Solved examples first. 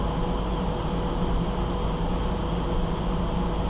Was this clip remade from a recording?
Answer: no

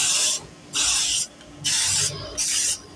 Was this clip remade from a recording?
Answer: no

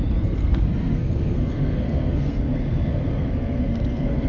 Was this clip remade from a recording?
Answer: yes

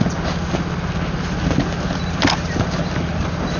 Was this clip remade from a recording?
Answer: no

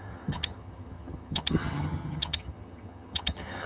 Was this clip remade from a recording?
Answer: yes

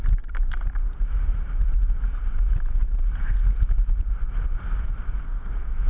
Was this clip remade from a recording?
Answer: yes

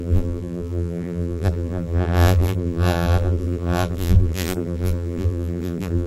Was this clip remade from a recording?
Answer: yes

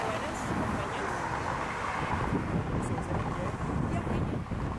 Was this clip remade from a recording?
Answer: no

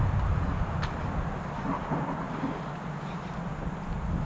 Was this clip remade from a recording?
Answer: no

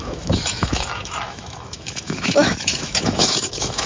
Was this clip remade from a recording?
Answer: yes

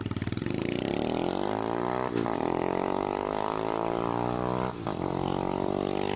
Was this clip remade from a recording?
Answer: yes